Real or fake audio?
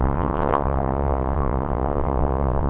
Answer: fake